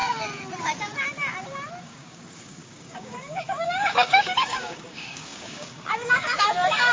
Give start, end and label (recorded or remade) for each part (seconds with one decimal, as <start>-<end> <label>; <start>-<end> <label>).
0.0-1.8 recorded; 1.8-6.9 remade